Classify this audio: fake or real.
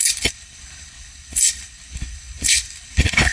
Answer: fake